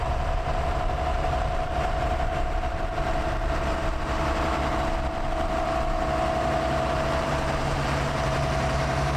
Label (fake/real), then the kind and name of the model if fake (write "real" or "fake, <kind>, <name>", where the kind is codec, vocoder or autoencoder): fake, vocoder, BigVGAN v2